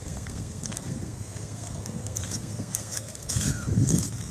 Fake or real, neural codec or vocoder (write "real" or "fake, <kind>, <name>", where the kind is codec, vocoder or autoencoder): fake, codec, SNAC